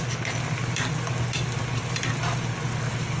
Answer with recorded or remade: recorded